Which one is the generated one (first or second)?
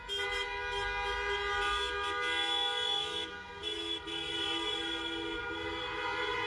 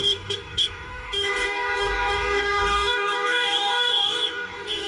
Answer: second